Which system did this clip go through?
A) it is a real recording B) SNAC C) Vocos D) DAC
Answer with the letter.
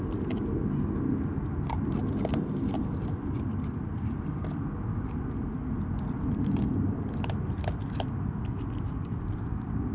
A